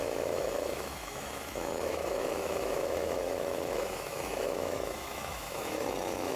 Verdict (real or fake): fake